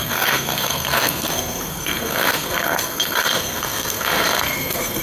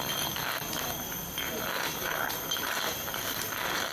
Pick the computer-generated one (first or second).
first